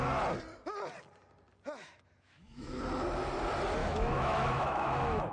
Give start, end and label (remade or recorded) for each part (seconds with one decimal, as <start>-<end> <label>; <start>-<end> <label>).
0.0-1.8 recorded; 1.8-2.8 remade; 2.8-3.8 recorded; 3.8-5.3 remade